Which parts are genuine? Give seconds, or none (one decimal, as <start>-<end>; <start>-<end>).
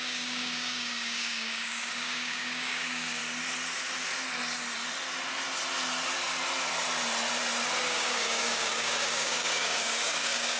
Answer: 3.2-7.8